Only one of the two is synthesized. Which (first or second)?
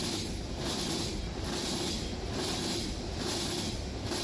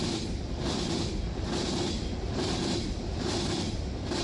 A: second